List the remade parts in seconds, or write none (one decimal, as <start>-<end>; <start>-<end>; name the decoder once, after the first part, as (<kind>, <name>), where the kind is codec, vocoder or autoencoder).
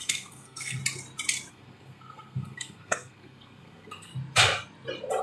0.0-0.8 (codec, SNAC); 1.5-4.1